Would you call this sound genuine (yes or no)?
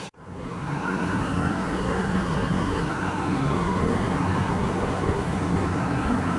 no